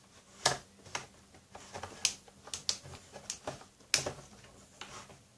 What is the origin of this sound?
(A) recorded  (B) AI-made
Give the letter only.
A